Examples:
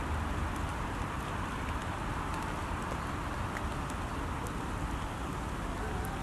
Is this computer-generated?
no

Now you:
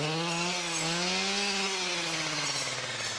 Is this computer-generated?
no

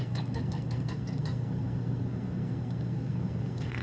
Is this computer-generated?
yes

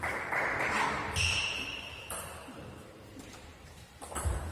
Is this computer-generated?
yes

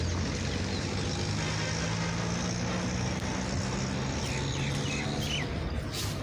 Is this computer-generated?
no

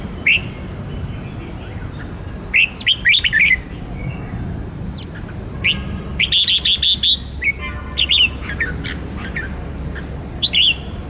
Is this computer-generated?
no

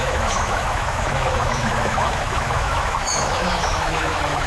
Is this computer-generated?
yes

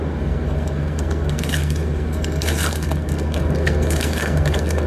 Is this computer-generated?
yes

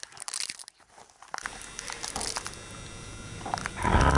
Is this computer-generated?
no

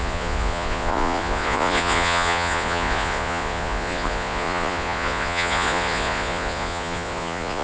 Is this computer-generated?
yes